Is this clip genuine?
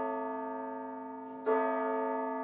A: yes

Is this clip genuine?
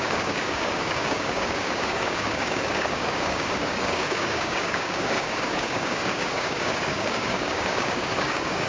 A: no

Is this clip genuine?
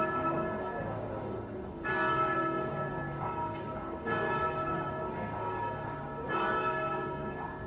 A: no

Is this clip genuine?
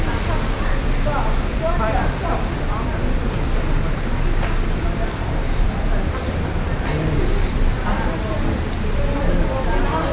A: yes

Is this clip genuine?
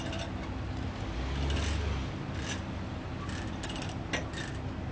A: yes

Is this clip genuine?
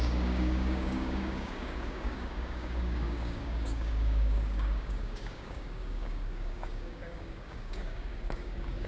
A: no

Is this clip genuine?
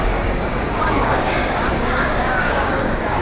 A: no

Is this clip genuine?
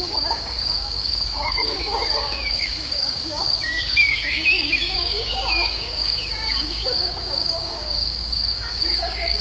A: no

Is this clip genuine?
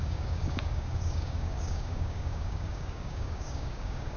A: no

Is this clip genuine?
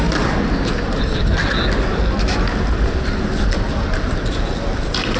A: yes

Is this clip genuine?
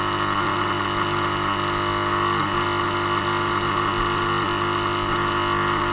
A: yes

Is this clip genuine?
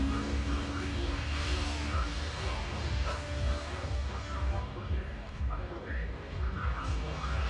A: no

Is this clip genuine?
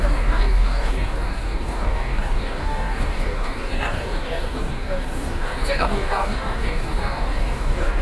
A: no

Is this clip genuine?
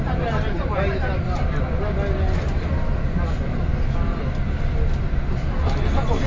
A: yes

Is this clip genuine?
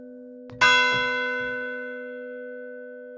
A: yes